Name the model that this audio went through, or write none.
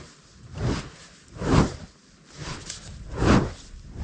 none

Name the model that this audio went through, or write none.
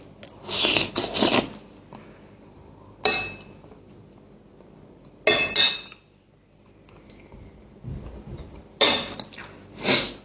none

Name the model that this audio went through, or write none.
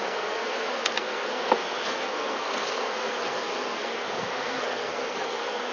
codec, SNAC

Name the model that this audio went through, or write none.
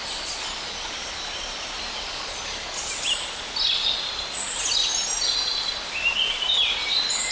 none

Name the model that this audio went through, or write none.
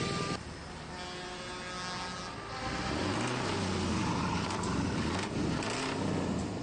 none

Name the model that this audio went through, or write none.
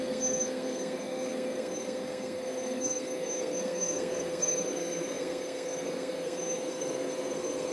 codec, SNAC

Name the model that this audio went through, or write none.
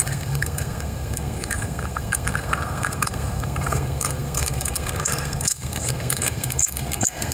codec, SNAC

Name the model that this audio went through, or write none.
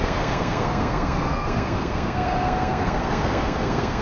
codec, SNAC